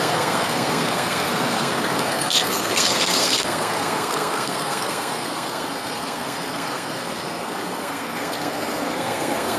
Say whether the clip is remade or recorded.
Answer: remade